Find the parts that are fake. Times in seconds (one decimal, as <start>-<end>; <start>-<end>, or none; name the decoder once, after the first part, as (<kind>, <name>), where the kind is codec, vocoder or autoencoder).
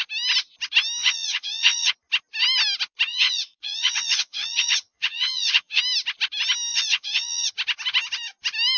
1.0-1.9 (vocoder, Vocos); 3.1-5.8; 6.7-7.5